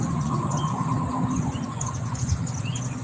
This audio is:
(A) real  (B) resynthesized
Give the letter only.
B